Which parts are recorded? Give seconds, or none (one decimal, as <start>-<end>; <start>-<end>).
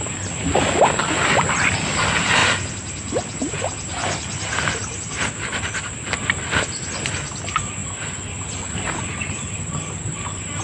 0.0-10.6